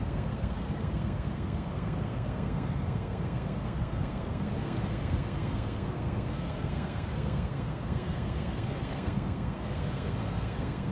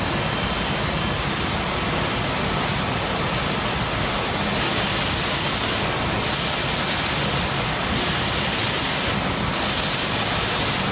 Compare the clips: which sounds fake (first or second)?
first